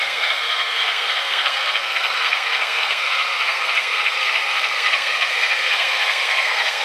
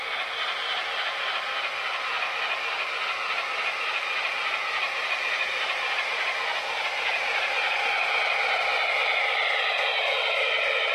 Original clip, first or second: second